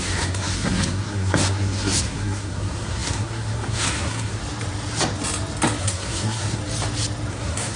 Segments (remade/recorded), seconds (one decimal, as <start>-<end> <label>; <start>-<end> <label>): 0.0-4.4 remade; 4.4-5.8 recorded; 5.8-6.6 remade; 6.6-7.3 recorded; 7.3-7.8 remade